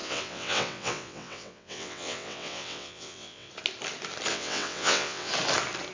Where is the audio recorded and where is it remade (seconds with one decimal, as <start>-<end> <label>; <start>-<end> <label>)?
0.0-3.5 remade; 3.5-4.3 recorded; 4.3-5.3 remade; 5.3-5.9 recorded